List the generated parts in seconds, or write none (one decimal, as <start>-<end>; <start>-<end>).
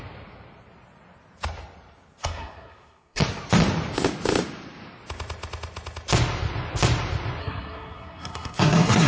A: 2.2-3.2; 7.4-9.1